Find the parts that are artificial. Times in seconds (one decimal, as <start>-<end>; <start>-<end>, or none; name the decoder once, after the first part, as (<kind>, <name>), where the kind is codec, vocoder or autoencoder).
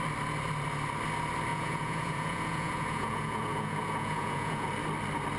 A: 1.5-4.7 (vocoder, Vocos)